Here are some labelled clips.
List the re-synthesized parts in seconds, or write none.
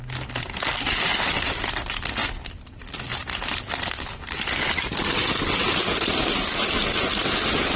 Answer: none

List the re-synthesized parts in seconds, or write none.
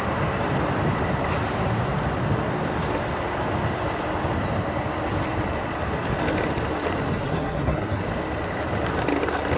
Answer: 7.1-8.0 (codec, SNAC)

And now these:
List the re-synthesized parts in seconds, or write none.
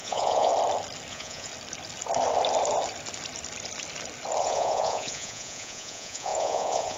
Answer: 0.0-0.5 (vocoder, Vocos); 1.1-1.5; 4.4-7.0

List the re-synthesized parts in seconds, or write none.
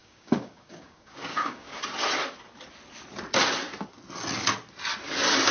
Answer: 0.0-1.8 (codec, DAC)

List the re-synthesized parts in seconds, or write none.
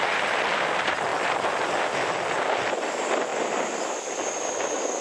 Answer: none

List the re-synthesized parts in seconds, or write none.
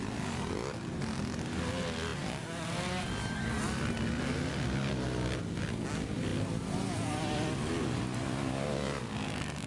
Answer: none